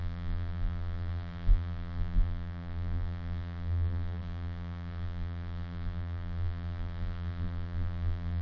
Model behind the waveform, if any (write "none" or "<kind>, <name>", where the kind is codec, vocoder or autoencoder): vocoder, BigVGAN v2